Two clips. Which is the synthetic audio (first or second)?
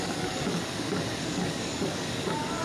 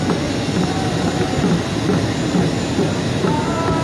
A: first